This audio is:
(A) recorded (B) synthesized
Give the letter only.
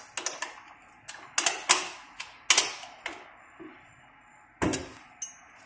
A